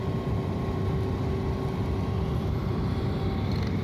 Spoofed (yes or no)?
no